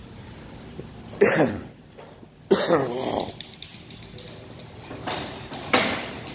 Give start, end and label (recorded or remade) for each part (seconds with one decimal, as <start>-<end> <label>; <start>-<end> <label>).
0.0-1.9 remade; 1.9-6.3 recorded